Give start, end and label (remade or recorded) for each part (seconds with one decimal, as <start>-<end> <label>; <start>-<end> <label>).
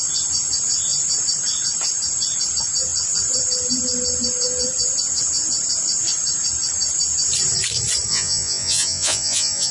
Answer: 0.0-8.1 recorded; 8.1-9.7 remade